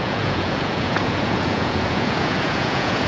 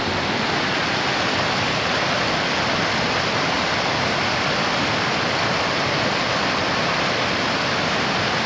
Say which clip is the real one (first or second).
second